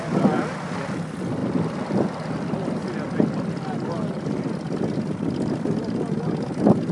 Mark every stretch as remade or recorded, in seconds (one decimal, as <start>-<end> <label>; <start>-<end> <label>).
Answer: 0.0-6.9 recorded